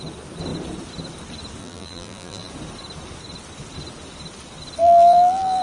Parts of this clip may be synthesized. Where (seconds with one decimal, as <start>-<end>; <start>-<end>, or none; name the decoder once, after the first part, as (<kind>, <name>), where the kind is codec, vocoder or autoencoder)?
1.6-2.5 (vocoder, BigVGAN v2); 4.8-5.6